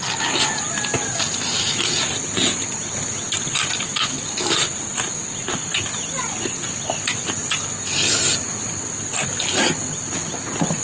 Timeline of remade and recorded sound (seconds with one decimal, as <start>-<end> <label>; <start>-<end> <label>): 0.0-10.8 recorded